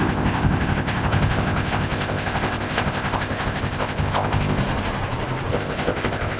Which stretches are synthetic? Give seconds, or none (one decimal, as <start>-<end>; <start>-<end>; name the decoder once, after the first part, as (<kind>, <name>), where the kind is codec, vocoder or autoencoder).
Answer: 0.0-4.6 (codec, ZipCodec); 5.5-6.4